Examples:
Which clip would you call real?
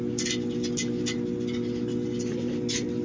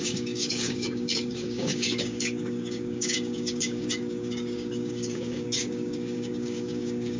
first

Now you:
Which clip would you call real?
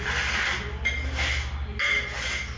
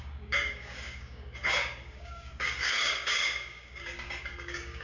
first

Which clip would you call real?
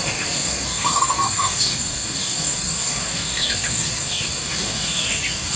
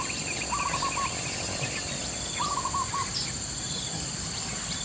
second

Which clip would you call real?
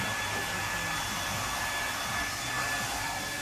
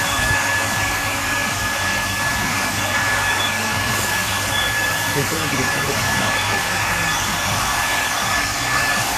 first